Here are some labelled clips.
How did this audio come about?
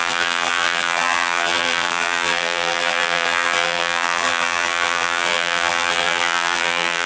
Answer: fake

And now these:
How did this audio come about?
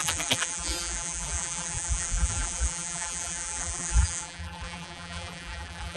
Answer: fake